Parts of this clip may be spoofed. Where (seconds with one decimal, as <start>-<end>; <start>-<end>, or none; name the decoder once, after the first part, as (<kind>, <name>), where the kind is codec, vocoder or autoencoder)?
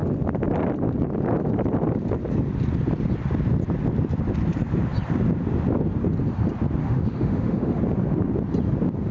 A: 6.8-7.8 (autoencoder, DAC-VAE)